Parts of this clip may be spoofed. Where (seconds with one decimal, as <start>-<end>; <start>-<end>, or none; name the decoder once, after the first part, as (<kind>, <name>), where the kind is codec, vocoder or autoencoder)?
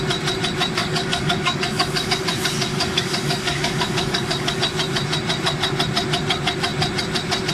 0.8-2.1 (codec, DAC); 2.7-4.6